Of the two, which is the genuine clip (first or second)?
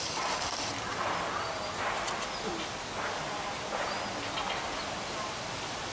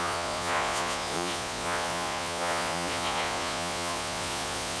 first